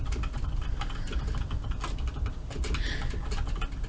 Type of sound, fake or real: real